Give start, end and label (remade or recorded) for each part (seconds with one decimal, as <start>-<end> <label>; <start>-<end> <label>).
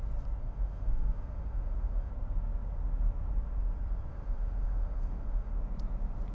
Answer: 0.0-0.4 recorded; 0.4-2.1 remade; 2.1-4.1 recorded; 4.1-5.5 remade; 5.5-6.3 recorded